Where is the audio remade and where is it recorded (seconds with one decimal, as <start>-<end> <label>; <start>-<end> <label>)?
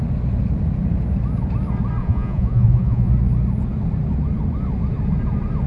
0.0-2.0 recorded; 2.0-3.1 remade; 3.1-5.7 recorded